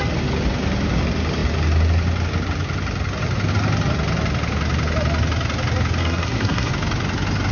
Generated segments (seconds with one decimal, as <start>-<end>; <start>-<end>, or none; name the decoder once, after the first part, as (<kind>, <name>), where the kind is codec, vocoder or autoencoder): 6.0-6.7 (codec, SNAC)